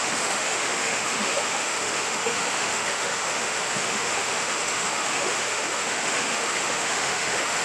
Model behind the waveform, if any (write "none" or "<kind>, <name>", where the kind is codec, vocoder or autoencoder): autoencoder, DAC-VAE